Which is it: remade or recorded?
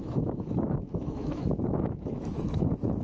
remade